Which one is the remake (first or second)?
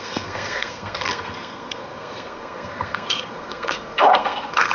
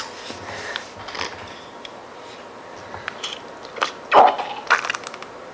first